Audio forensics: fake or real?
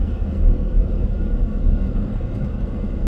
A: fake